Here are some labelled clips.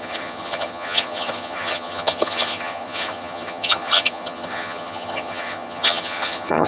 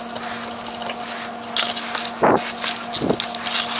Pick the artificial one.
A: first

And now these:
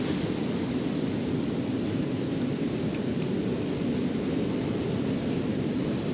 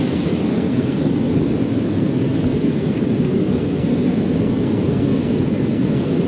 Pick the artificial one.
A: second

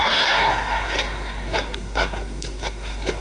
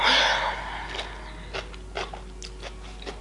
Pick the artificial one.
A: first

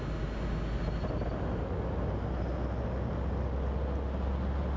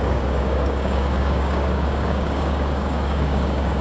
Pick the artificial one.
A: second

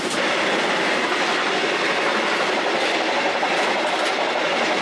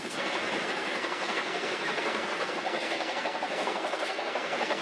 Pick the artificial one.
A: second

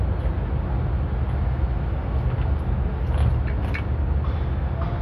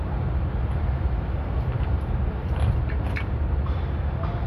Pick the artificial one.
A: second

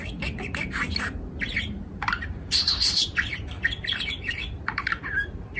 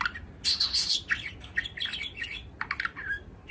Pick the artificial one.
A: first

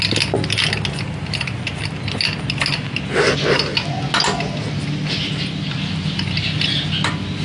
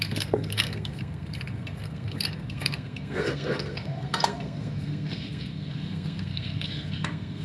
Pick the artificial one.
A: second